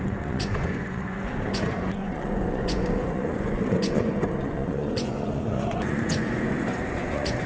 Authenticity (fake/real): fake